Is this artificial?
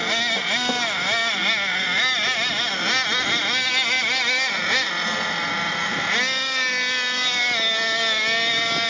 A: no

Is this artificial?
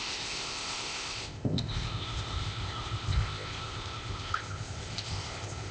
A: yes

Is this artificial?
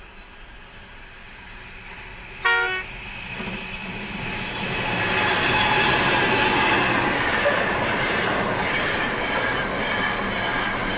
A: no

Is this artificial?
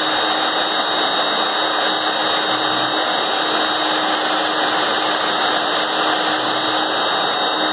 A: no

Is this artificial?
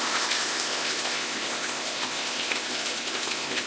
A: yes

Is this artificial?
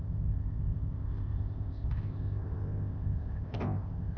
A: yes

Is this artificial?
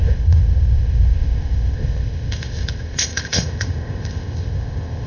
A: yes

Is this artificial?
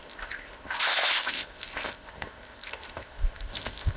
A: yes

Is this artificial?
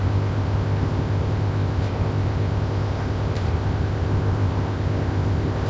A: yes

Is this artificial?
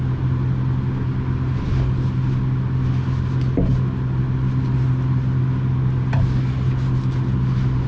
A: no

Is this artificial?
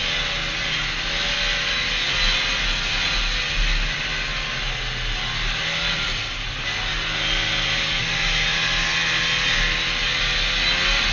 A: no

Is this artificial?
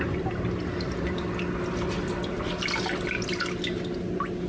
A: no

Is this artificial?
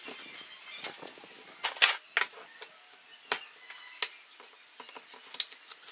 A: no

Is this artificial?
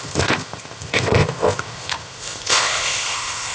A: yes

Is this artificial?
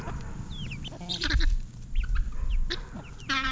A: no